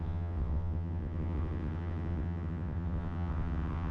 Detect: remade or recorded remade